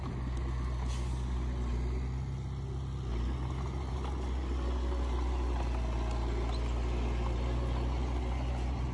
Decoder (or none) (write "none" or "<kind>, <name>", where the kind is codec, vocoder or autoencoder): none